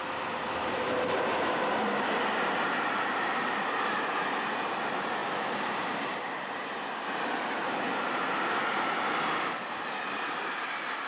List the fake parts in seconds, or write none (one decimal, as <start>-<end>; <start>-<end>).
none